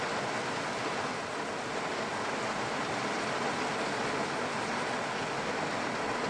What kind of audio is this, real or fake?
real